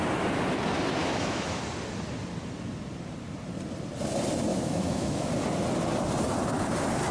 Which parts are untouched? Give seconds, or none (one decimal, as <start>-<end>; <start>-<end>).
0.0-1.0; 1.6-4.5; 5.3-7.1

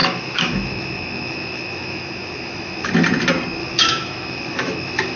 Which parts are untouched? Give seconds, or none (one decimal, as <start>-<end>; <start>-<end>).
2.9-3.6

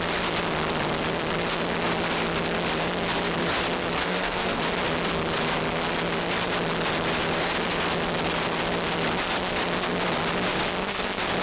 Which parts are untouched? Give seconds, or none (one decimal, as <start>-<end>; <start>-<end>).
0.0-4.0; 4.6-11.4

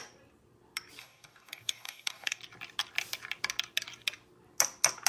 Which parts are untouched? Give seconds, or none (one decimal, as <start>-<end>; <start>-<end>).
0.0-1.0; 2.4-5.1

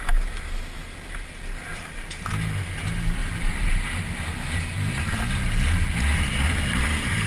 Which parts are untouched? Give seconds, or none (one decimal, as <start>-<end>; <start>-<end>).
0.0-1.7; 2.3-3.2; 4.0-5.9